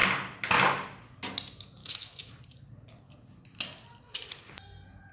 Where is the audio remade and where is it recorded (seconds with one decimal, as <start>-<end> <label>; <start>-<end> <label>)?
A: 0.0-1.8 recorded; 1.8-2.3 remade; 2.3-5.1 recorded